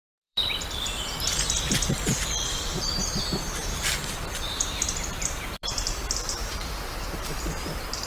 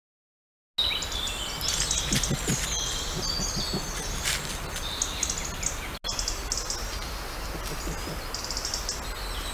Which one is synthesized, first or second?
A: first